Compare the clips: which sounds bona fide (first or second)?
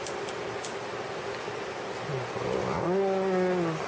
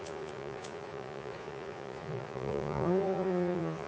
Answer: first